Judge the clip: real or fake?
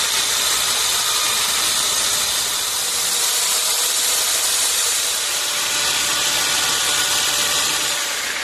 real